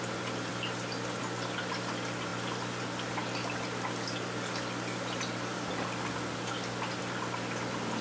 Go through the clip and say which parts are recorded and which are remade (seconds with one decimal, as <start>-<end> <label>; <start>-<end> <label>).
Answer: 0.0-8.0 recorded